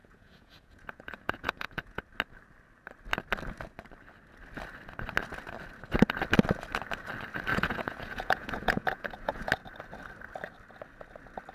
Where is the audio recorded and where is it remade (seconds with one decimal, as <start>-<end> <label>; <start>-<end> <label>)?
0.0-2.0 remade; 2.0-7.5 recorded; 7.5-9.5 remade; 9.5-11.5 recorded

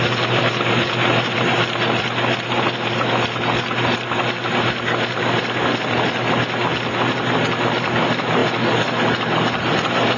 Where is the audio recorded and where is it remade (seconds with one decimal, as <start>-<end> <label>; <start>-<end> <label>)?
0.0-10.2 recorded